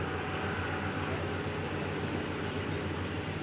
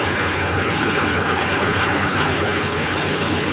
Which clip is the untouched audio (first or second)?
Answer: first